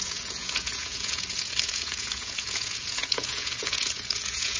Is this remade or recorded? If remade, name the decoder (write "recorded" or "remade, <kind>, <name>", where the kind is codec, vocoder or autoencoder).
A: remade, vocoder, Vocos